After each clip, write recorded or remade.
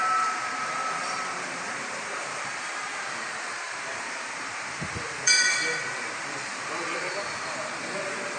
remade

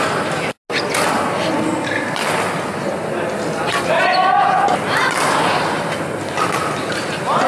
recorded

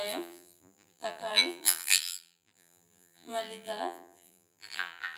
remade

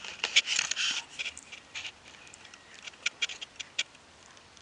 remade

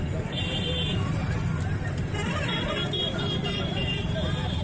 remade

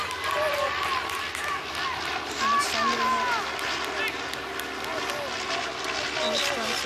recorded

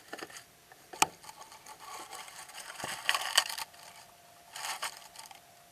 recorded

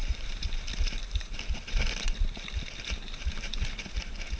remade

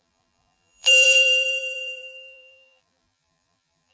remade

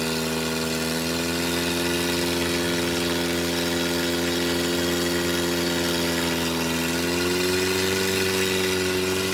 recorded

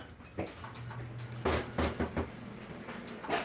recorded